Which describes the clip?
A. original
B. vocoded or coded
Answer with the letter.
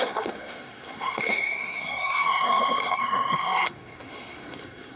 B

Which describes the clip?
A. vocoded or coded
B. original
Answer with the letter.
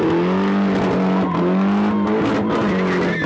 B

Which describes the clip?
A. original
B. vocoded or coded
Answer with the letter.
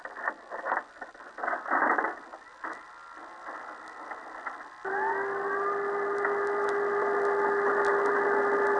A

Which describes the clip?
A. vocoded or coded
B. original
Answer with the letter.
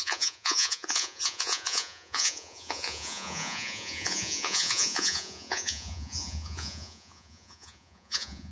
A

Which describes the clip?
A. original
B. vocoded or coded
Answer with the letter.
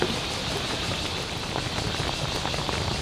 A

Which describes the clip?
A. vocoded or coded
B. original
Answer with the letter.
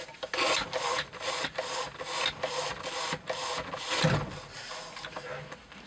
B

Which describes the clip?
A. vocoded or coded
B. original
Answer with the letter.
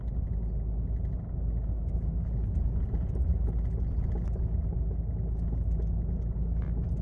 B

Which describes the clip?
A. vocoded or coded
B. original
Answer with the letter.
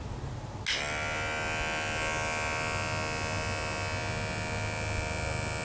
B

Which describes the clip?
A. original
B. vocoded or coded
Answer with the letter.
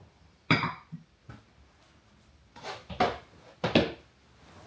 A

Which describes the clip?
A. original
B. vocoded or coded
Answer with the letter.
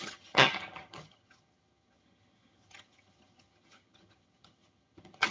B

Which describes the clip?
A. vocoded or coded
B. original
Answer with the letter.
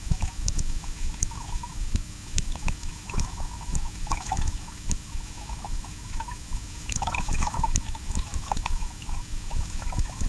A